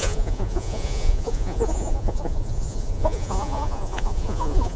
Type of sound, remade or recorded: remade